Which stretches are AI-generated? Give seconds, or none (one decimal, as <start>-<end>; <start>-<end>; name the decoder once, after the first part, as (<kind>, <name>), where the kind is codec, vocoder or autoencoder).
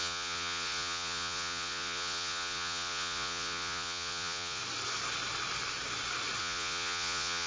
0.0-4.6 (vocoder, Vocos); 6.4-7.5